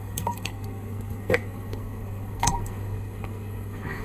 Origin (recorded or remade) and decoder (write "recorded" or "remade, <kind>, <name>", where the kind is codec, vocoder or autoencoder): remade, codec, SNAC